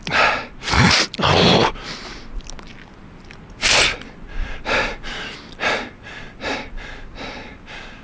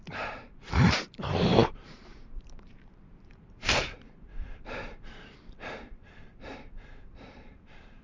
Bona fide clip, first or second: first